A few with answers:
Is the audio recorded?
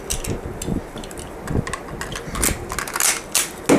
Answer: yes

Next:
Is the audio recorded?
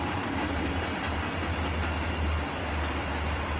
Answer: no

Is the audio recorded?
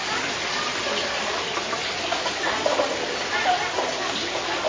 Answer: yes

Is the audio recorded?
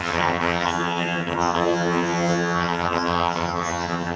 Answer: no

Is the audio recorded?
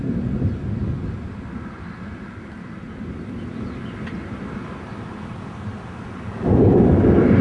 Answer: yes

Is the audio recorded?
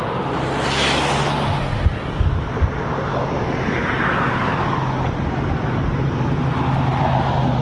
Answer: yes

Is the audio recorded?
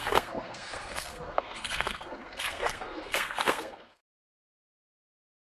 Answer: no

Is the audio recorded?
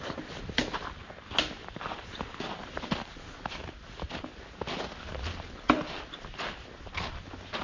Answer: yes